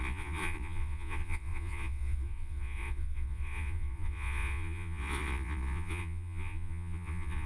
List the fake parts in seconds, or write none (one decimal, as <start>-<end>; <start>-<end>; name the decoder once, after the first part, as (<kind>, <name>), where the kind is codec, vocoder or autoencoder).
0.0-7.5 (vocoder, Vocos)